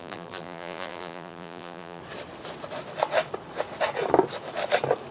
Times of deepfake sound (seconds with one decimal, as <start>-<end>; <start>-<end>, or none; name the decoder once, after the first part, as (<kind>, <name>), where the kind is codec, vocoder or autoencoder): 0.0-2.0 (vocoder, BigVGAN v2)